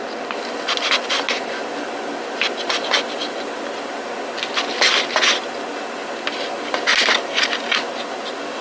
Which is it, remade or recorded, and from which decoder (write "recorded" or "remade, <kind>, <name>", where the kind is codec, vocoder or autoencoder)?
recorded